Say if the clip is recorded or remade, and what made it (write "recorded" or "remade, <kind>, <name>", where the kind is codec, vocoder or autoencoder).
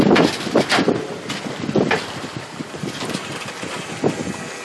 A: recorded